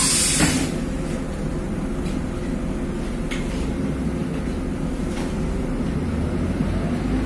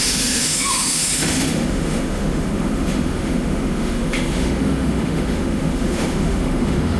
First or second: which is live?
first